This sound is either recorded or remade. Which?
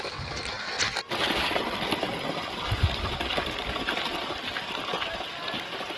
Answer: recorded